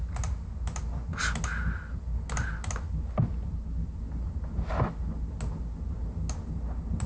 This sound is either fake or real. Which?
real